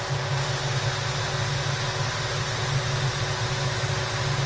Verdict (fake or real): real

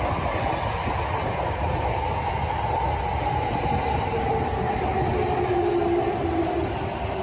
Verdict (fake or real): real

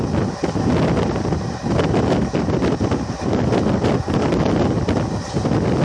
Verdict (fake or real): real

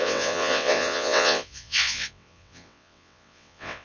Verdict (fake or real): fake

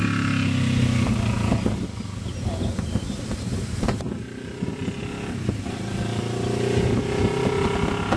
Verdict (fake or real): real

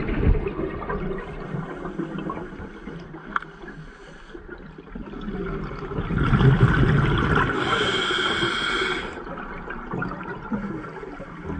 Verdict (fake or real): real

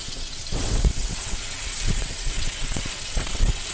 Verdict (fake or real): fake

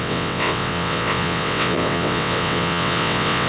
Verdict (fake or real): fake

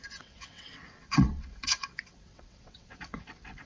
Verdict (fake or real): fake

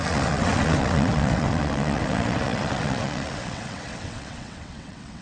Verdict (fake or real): fake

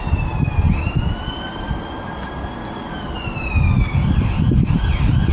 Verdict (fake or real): real